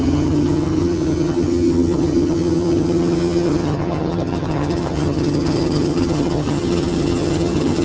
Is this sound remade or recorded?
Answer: remade